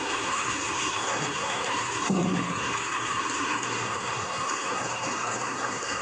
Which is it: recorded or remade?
remade